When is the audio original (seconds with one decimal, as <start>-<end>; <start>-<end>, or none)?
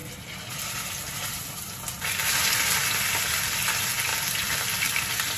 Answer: 0.0-5.4